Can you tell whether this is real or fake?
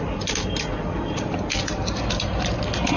real